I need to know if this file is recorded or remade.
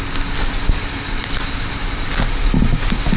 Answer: recorded